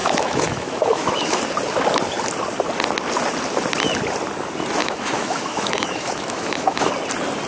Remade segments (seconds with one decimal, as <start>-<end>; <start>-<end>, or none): 0.0-1.4; 4.8-6.9